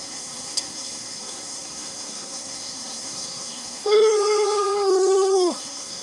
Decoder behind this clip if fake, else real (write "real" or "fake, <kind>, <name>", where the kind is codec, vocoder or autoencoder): fake, codec, SNAC